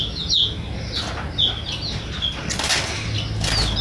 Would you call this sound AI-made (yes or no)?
no